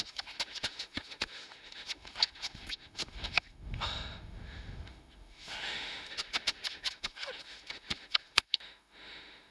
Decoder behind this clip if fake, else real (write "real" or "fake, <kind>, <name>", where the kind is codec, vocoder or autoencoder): fake, autoencoder, DAC-VAE